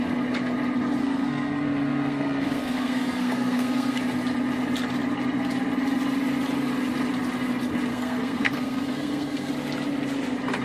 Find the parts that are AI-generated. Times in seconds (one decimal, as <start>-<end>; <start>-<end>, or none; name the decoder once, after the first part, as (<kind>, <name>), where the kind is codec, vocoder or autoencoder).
1.0-4.0 (codec, SNAC); 7.9-9.5